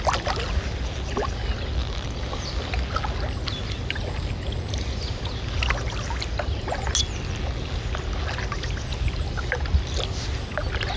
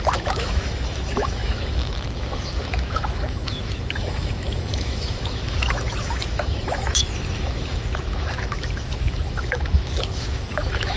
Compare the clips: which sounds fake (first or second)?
second